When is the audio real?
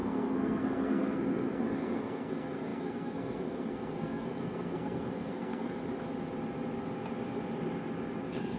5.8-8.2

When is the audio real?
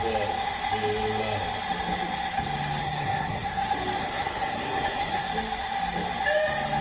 0.0-2.8; 3.6-4.0; 5.3-6.8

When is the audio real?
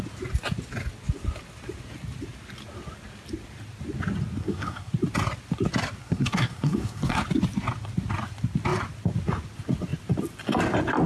0.0-4.4; 4.9-6.0; 7.2-11.1